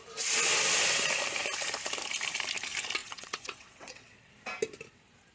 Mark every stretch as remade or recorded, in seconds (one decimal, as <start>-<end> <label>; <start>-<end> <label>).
0.0-3.0 recorded; 3.0-4.3 remade; 4.3-5.3 recorded

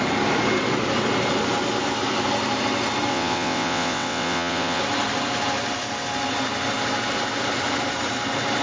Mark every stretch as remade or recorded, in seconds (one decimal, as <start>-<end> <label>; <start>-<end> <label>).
0.0-3.1 recorded; 3.1-4.8 remade; 4.8-8.6 recorded

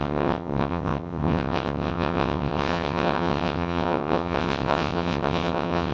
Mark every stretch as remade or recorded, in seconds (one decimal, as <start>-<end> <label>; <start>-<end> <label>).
0.0-5.9 remade

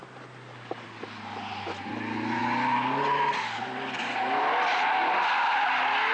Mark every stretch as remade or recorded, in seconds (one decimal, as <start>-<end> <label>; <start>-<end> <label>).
0.0-6.1 recorded

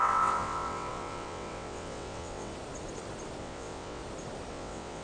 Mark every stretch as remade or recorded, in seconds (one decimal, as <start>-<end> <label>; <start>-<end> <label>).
0.0-2.5 remade; 2.5-3.4 recorded; 3.4-4.0 remade; 4.0-4.5 recorded; 4.5-5.0 remade

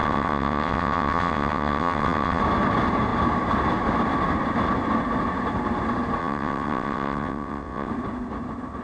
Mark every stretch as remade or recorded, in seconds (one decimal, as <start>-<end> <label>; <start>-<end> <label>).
0.0-2.4 remade; 2.4-6.2 recorded; 6.2-7.9 remade; 7.9-8.8 recorded

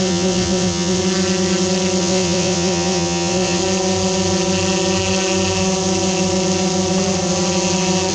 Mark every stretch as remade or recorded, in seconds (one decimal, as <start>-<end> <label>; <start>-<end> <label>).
0.0-1.0 remade; 1.0-2.0 recorded; 2.0-3.6 remade; 3.6-8.1 recorded

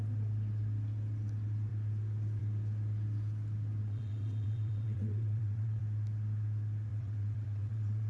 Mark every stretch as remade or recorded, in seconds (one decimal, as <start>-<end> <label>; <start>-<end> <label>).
0.0-3.8 recorded; 3.8-5.8 remade; 5.8-6.9 recorded; 6.9-8.1 remade